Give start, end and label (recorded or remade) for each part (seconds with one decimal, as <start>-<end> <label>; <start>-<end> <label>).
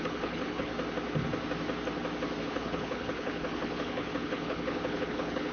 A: 0.0-0.7 remade; 0.7-2.4 recorded; 2.4-5.5 remade